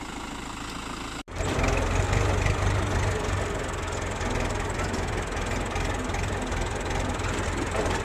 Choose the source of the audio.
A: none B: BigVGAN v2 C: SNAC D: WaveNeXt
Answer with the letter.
A